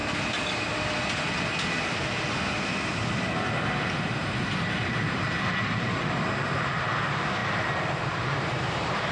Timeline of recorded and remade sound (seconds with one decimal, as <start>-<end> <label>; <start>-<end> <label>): 0.0-3.9 recorded; 3.9-9.1 remade